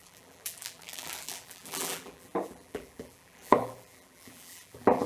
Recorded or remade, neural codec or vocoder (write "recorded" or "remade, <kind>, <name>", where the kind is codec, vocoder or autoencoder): remade, vocoder, BigVGAN v2